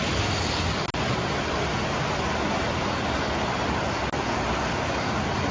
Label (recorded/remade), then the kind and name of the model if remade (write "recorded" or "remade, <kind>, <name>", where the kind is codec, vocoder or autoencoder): recorded